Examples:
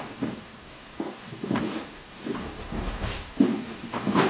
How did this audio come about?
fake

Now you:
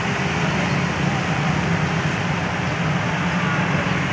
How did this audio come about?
real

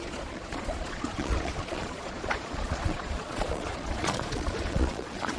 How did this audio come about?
fake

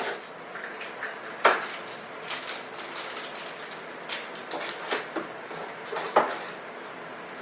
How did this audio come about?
real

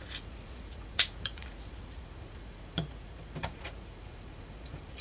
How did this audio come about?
fake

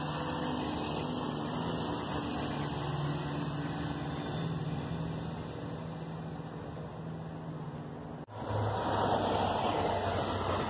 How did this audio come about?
real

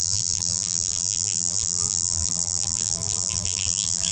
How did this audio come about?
fake